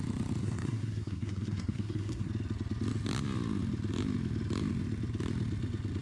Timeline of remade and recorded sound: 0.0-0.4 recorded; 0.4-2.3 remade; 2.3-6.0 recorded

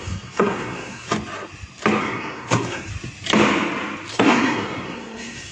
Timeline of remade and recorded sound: 0.0-1.1 remade; 1.1-2.0 recorded; 2.0-2.9 remade; 2.9-4.1 recorded; 4.1-5.5 remade

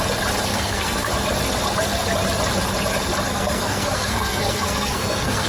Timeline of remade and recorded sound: 0.0-0.5 recorded; 0.5-1.1 remade; 1.1-3.3 recorded; 3.3-5.5 remade